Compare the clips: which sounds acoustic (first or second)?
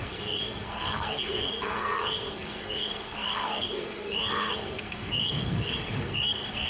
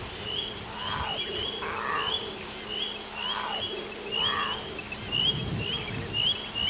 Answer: second